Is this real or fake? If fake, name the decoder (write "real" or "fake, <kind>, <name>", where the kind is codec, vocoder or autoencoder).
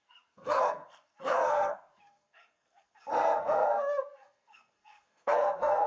fake, codec, SNAC